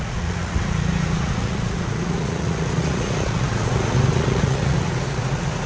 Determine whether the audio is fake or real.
fake